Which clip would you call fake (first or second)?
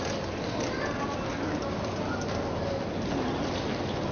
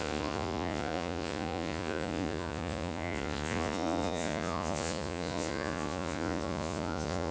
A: second